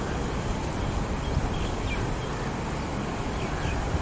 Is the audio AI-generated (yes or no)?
no